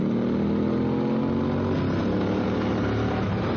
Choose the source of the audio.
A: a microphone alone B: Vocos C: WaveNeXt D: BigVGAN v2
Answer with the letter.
A